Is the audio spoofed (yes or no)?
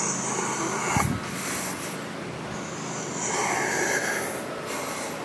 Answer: no